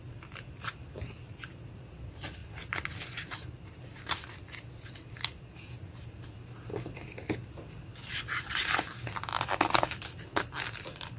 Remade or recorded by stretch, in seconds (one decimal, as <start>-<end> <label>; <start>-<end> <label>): 0.0-11.2 recorded

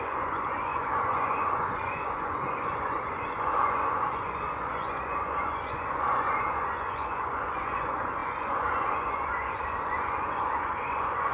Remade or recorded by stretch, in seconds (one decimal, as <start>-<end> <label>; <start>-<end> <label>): 0.0-11.3 remade

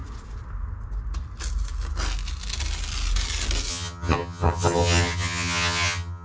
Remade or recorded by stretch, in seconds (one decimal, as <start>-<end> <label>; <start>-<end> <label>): 0.0-3.7 recorded; 3.7-6.2 remade